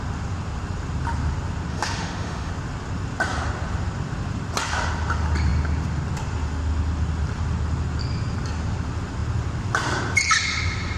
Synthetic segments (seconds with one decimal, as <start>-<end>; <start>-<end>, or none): 1.7-2.5